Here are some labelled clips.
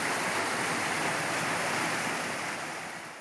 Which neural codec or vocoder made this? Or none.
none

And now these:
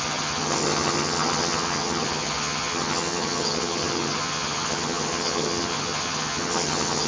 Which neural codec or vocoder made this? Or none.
vocoder, HiFi-GAN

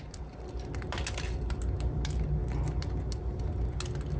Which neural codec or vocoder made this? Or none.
none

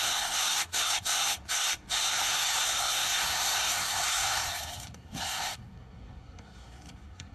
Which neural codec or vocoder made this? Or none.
codec, SNAC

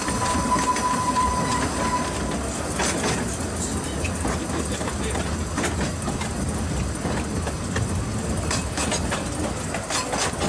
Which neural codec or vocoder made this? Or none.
none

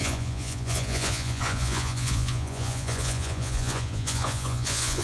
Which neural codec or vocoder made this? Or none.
vocoder, Vocos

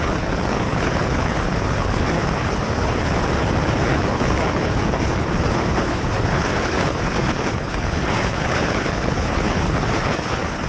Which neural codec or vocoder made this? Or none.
codec, HILCodec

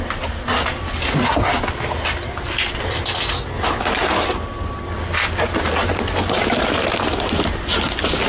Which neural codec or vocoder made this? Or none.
none